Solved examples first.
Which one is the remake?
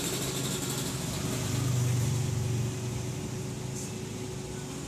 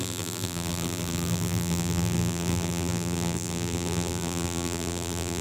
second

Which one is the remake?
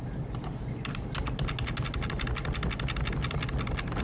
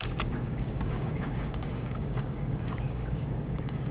second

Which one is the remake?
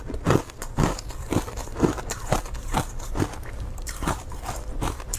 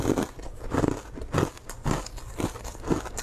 first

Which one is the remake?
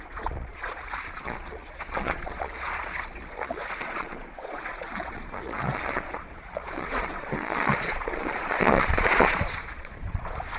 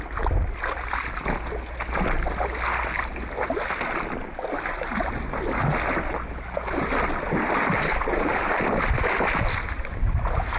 first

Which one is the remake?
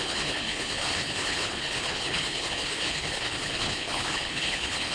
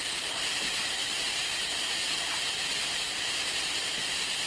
first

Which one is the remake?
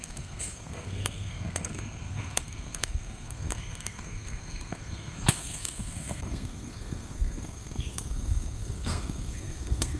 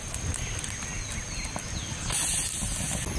first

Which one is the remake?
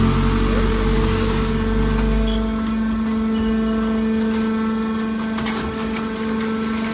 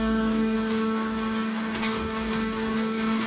second